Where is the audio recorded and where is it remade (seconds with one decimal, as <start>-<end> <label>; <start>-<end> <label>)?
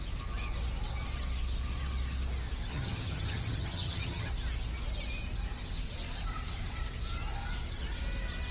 0.0-2.7 recorded; 2.7-4.3 remade; 4.3-8.5 recorded